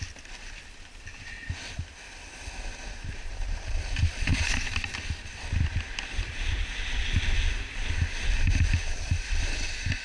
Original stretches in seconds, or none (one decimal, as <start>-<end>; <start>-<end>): 0.0-10.0

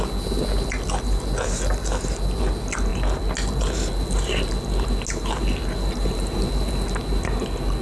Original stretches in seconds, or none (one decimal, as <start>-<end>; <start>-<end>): 0.0-7.8

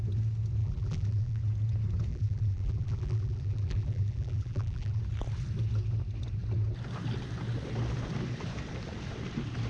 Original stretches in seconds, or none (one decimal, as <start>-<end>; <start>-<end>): 0.0-0.6; 1.4-2.1; 5.0-9.7